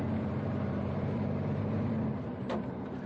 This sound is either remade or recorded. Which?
remade